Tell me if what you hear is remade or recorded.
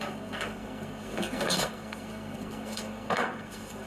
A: remade